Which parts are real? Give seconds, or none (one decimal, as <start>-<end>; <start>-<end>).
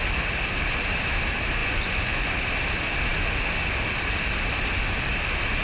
0.0-1.6; 2.3-5.6